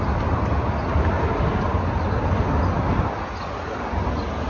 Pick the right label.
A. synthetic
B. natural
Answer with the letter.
B